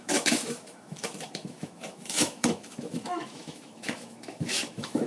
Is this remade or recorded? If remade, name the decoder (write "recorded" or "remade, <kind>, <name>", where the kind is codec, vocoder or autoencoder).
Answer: remade, autoencoder, DAC-VAE